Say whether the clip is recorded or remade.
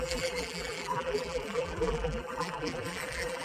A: remade